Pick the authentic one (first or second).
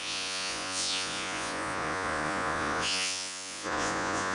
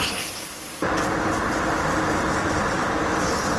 second